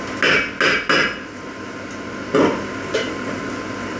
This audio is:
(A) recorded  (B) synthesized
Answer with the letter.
A